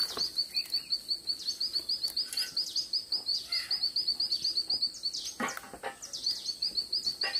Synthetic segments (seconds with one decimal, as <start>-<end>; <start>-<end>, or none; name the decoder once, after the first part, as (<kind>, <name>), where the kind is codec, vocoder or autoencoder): none